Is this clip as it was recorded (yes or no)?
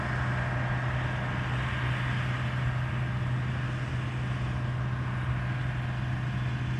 yes